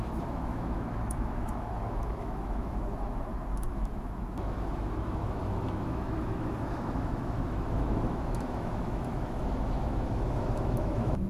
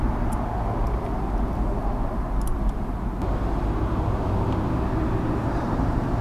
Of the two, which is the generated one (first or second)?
first